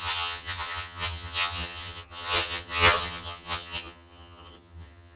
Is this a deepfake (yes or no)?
yes